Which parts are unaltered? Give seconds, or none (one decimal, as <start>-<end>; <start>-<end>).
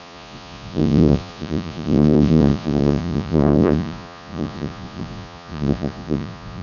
none